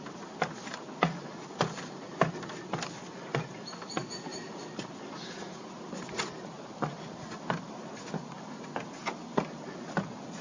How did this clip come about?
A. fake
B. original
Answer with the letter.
B